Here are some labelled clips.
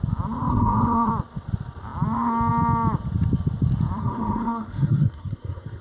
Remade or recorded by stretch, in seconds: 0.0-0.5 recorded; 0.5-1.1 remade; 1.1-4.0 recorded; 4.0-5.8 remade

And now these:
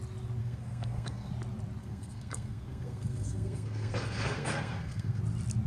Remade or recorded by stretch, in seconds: 0.0-0.4 recorded; 0.4-1.3 remade; 1.3-1.8 recorded; 1.8-5.2 remade; 5.2-5.7 recorded

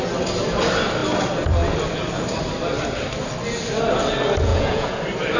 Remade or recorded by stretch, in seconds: 0.0-4.5 recorded; 4.5-5.0 remade; 5.0-5.4 recorded

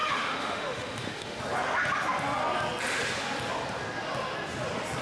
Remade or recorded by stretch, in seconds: 0.0-1.4 remade; 1.4-5.0 recorded

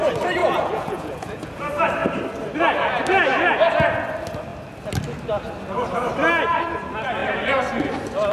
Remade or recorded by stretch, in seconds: 0.0-0.4 recorded; 0.4-1.6 remade; 1.6-8.3 recorded

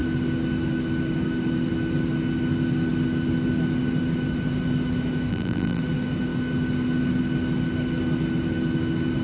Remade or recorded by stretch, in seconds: 0.0-5.3 recorded; 5.3-5.8 remade; 5.8-9.2 recorded